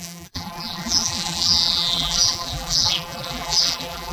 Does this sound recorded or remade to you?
remade